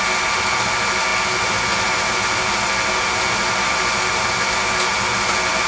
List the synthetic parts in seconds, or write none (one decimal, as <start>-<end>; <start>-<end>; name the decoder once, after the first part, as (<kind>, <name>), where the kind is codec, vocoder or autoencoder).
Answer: none